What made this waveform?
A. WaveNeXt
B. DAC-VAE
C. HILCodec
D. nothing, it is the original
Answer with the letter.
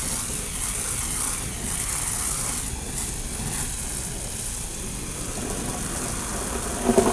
D